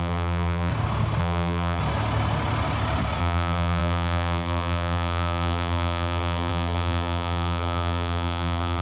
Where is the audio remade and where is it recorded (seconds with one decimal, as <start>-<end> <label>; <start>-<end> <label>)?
0.0-0.7 remade; 0.7-1.2 recorded; 1.2-1.8 remade; 1.8-3.2 recorded; 3.2-8.8 remade